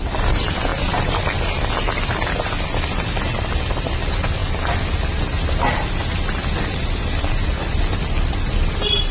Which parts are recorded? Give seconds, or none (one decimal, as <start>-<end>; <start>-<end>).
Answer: 0.0-9.1